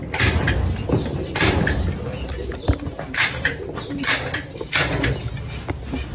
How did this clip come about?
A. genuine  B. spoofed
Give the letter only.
A